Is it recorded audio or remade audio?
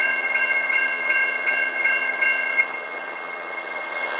remade